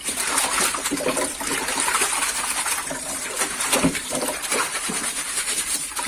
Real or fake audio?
fake